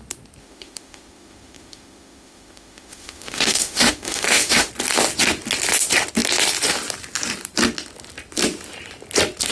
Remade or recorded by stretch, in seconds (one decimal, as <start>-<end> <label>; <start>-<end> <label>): 0.0-0.4 recorded; 0.4-4.7 remade; 4.7-9.5 recorded